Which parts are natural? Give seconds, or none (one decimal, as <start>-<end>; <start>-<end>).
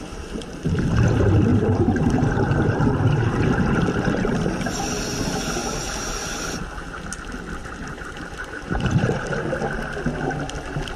0.0-1.5; 3.6-5.6; 6.2-7.6; 9.5-11.0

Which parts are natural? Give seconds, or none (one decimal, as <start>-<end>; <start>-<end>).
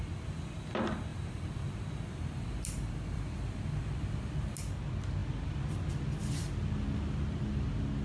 0.0-1.1; 4.3-8.0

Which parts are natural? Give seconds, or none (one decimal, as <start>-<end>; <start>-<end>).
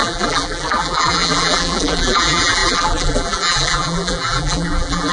none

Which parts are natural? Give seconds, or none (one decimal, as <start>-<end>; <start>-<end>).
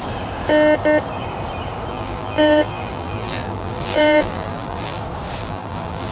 0.0-1.9; 5.0-5.4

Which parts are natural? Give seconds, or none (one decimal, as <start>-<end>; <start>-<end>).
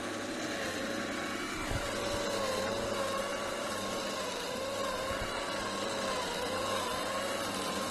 0.0-0.7; 1.6-3.3; 4.0-7.9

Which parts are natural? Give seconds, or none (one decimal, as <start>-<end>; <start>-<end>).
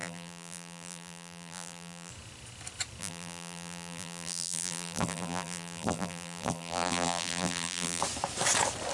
2.1-3.0; 8.0-8.9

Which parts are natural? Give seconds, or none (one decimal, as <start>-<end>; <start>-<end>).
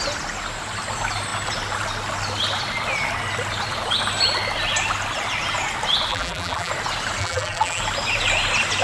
0.0-6.1; 6.7-7.2; 7.8-8.8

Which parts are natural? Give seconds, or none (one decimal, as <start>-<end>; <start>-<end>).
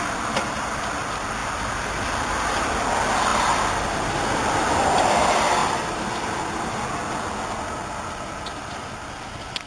0.0-3.3; 5.0-9.7